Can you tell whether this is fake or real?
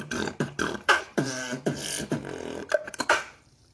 fake